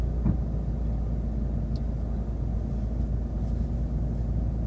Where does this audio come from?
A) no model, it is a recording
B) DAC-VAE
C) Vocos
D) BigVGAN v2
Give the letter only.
A